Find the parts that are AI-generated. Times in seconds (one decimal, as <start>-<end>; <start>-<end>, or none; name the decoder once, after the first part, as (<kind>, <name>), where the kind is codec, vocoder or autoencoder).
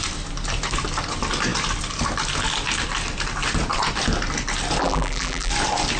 4.8-5.5 (vocoder, BigVGAN v2)